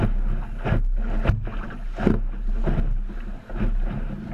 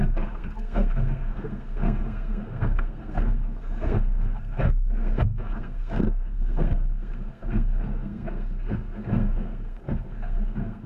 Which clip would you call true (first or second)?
first